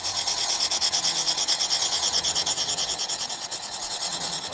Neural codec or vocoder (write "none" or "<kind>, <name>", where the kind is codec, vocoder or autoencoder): vocoder, WaveNeXt